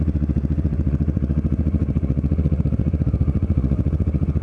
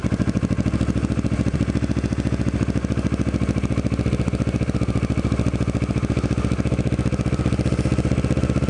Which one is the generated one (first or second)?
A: first